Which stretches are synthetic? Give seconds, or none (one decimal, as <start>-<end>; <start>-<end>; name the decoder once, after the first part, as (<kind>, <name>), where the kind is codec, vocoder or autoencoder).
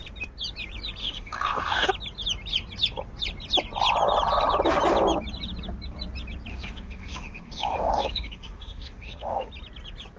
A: 1.0-1.9 (autoencoder, DAC-VAE); 6.5-9.5